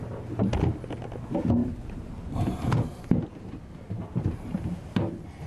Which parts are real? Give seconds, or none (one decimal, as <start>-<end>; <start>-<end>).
0.0-1.6; 4.9-5.5